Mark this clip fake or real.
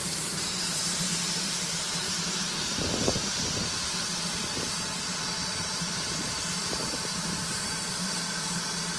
fake